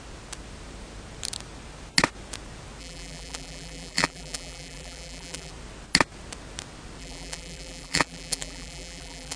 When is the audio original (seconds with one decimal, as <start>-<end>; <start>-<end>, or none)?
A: 0.0-2.8; 5.5-7.0